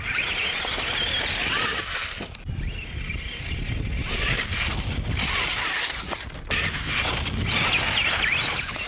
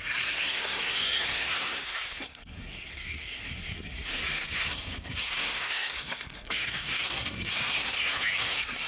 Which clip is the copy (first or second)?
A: second